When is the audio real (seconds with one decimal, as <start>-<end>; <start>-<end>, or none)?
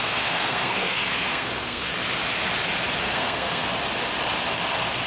1.9-3.0; 3.6-5.1